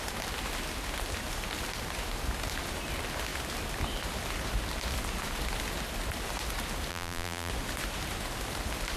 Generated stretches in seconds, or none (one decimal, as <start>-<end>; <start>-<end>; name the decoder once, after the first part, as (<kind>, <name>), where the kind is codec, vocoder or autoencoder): 6.9-7.5 (vocoder, BigVGAN v2)